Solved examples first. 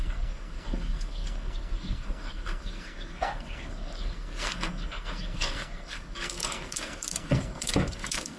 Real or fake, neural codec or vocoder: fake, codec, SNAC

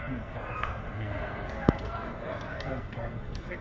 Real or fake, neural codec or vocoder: fake, codec, SNAC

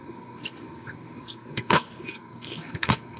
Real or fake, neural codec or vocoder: fake, codec, SNAC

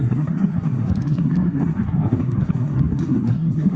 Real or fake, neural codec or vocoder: fake, codec, SNAC